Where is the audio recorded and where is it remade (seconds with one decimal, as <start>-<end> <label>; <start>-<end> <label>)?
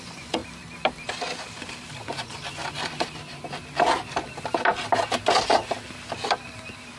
0.0-0.4 remade; 0.4-2.0 recorded; 2.0-2.6 remade; 2.6-7.0 recorded